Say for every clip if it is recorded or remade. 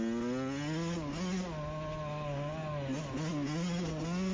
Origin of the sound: recorded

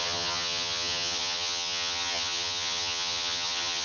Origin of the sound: remade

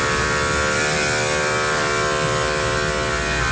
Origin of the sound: recorded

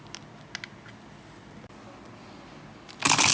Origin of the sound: recorded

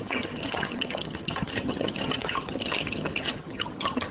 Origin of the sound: remade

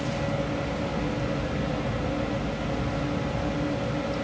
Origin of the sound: recorded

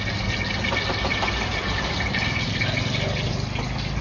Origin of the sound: recorded